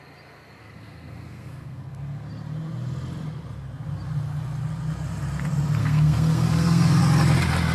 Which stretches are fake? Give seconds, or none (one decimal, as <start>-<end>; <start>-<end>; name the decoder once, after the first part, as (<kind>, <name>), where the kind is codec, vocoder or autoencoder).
0.6-2.3 (codec, SNAC); 5.8-7.0